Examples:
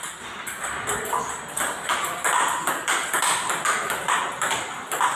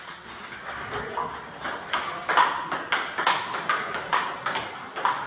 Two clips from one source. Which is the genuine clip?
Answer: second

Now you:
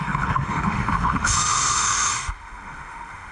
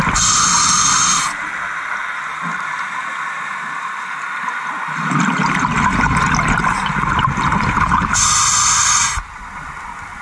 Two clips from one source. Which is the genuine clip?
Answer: second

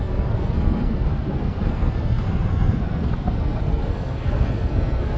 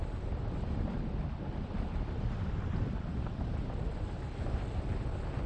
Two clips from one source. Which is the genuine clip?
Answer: second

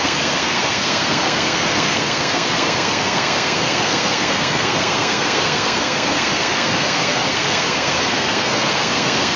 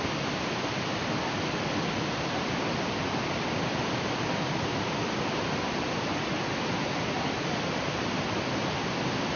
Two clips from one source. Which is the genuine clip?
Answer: second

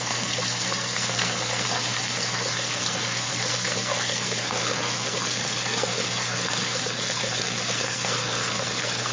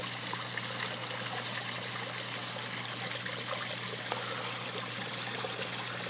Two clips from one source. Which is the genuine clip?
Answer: second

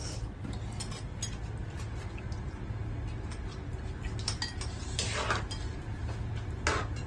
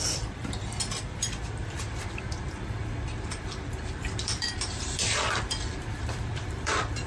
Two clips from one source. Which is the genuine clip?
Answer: first